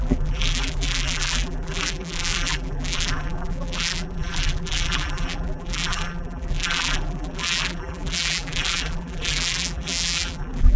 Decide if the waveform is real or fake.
fake